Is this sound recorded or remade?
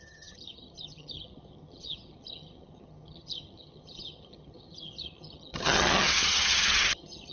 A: remade